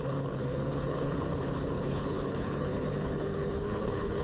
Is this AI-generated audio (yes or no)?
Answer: yes